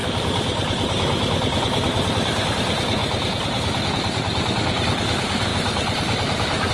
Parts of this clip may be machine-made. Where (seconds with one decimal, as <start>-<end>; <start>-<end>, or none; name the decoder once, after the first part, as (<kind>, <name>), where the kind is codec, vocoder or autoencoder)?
0.0-2.5 (vocoder, BigVGAN v2); 3.0-3.9; 5.5-6.7